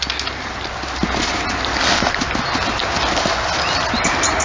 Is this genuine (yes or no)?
yes